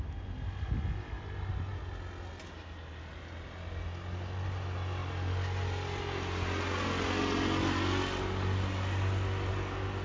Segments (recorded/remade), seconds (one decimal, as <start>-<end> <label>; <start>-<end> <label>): 0.0-10.0 recorded